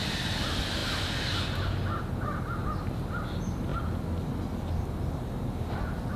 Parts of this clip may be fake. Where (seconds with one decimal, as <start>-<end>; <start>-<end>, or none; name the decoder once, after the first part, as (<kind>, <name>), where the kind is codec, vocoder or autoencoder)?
none